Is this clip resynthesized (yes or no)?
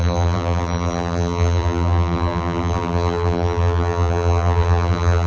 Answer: yes